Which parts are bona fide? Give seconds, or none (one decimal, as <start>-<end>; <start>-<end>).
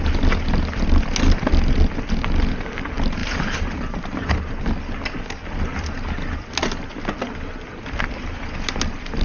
0.0-9.2